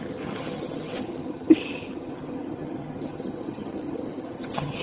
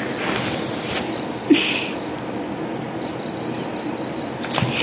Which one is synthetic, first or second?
first